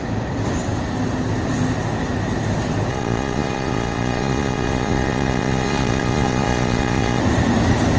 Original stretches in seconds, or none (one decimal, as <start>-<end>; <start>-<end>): 0.0-2.9; 7.2-8.0